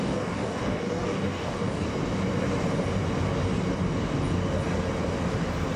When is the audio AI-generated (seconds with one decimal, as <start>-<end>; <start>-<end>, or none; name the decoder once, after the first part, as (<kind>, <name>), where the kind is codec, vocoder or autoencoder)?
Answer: 0.0-1.9 (codec, DAC)